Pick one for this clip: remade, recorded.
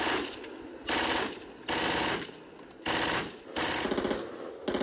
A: recorded